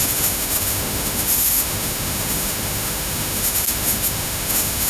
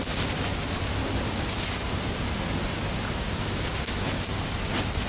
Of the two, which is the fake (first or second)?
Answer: first